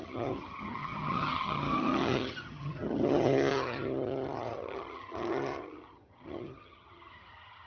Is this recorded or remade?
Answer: remade